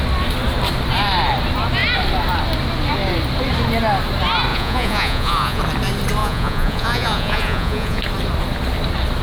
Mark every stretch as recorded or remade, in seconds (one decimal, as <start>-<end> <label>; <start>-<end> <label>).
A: 0.0-4.5 recorded; 4.5-5.6 remade; 5.6-6.2 recorded; 6.2-8.0 remade; 8.0-9.2 recorded

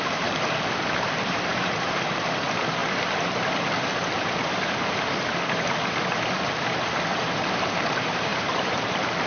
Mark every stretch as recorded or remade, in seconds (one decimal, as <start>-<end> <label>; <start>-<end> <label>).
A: 0.0-2.8 remade; 2.8-4.8 recorded; 4.8-9.3 remade